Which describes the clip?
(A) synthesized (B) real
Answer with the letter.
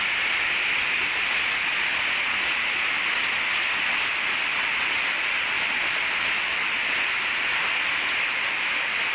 B